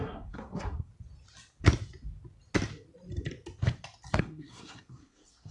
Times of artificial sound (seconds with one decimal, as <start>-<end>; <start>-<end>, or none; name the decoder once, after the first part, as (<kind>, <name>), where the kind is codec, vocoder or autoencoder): 0.0-0.9 (codec, SNAC); 4.2-5.5

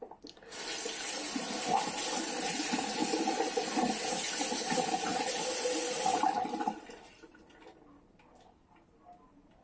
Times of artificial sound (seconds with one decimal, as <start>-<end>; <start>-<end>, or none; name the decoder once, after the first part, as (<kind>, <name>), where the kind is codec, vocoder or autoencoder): none

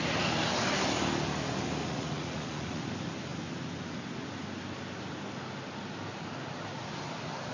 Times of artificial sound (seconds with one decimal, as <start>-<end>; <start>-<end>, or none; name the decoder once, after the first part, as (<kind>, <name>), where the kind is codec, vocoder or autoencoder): 1.8-2.8 (vocoder, Vocos)